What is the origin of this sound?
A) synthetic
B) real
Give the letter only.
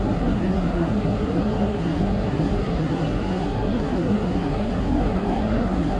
A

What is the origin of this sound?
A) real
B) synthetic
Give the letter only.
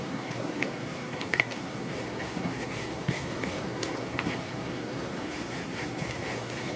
B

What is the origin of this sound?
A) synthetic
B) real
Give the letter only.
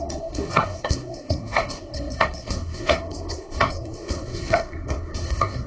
A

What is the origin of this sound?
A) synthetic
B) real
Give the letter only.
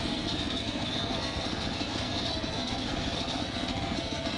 A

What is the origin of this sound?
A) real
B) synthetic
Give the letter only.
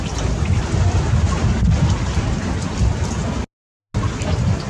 A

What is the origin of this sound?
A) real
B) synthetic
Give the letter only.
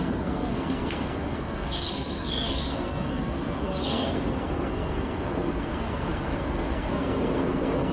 B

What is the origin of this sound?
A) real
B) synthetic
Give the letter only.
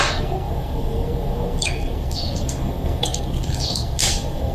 B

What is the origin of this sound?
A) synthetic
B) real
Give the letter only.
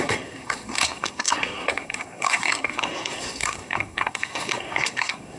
A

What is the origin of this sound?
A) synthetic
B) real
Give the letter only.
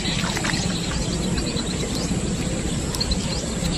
B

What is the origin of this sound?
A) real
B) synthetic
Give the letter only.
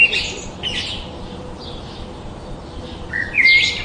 A